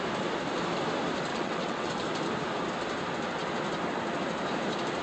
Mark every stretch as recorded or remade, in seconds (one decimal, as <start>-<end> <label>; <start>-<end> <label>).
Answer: 0.0-1.3 recorded; 1.3-1.9 remade; 1.9-5.0 recorded